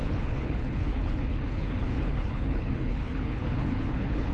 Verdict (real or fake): fake